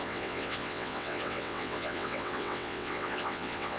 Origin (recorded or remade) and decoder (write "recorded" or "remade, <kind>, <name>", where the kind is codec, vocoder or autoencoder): remade, vocoder, WaveNeXt